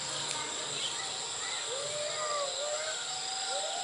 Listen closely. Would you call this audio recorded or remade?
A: recorded